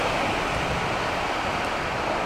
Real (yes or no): no